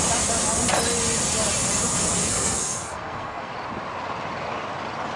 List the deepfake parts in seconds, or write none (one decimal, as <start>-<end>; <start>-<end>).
2.2-3.5